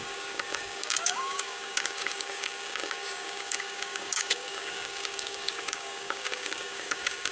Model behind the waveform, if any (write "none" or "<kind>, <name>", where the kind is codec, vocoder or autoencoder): codec, DAC